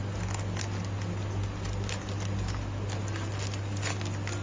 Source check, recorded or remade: recorded